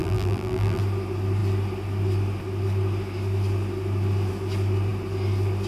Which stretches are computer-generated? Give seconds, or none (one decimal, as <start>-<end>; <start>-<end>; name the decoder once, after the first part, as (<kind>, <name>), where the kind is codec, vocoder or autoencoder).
0.0-0.8 (vocoder, BigVGAN v2)